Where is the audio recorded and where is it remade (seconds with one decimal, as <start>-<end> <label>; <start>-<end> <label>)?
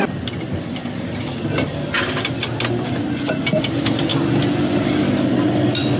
0.0-0.8 remade; 0.8-3.6 recorded; 3.6-4.1 remade; 4.1-5.3 recorded; 5.3-6.0 remade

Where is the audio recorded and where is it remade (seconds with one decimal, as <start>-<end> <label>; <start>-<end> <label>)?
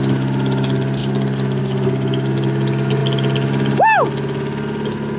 0.0-5.2 recorded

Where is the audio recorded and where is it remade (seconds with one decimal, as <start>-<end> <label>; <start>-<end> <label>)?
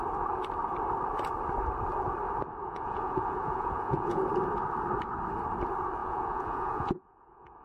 0.0-2.6 recorded; 2.6-4.2 remade; 4.2-6.0 recorded; 6.0-7.6 remade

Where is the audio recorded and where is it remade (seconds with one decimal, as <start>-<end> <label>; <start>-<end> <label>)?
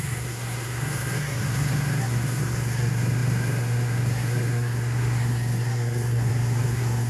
0.0-7.1 remade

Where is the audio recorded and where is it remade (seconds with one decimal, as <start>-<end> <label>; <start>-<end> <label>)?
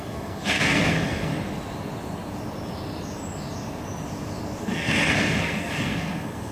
0.0-1.3 remade; 1.3-4.6 recorded; 4.6-6.5 remade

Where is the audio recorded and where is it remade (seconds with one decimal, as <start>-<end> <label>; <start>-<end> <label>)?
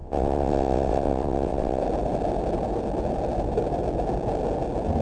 0.0-1.8 remade; 1.8-5.0 recorded